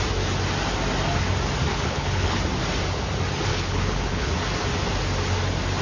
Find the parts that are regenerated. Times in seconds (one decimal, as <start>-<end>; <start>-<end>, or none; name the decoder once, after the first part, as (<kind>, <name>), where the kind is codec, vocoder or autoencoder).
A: 1.7-2.4 (codec, HILCodec); 3.5-4.3